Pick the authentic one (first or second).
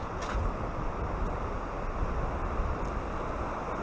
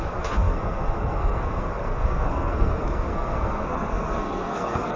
first